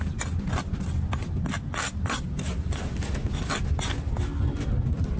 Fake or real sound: real